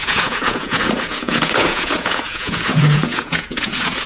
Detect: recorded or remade remade